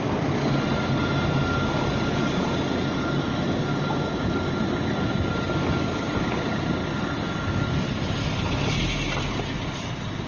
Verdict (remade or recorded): recorded